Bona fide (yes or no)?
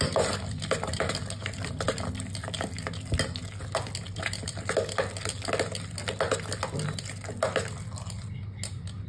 yes